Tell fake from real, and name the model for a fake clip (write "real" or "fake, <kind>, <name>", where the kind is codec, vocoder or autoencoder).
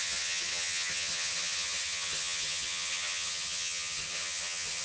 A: fake, vocoder, HiFi-GAN